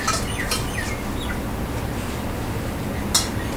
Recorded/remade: recorded